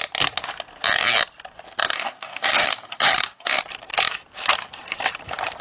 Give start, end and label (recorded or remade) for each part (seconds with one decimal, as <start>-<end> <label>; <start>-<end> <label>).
0.0-1.9 recorded; 1.9-3.6 remade; 3.6-5.6 recorded